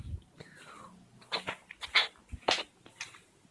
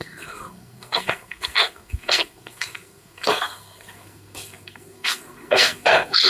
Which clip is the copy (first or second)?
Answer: second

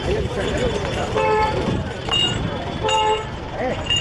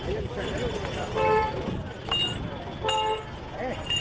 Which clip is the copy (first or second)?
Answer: first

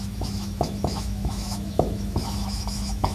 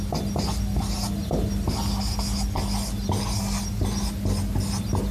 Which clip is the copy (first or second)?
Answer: first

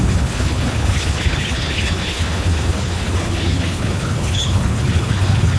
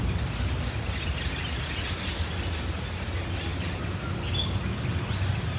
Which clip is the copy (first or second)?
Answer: first